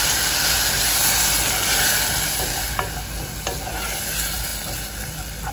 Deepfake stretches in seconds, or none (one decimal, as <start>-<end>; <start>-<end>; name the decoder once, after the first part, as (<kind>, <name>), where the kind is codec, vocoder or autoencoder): none